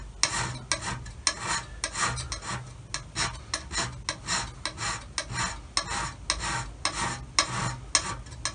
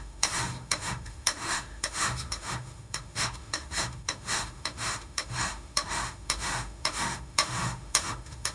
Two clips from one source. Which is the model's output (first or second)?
second